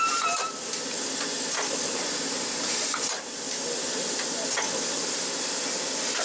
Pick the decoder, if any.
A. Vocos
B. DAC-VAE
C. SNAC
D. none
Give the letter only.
D